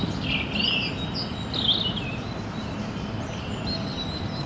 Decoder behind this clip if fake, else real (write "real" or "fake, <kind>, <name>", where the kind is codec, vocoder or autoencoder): real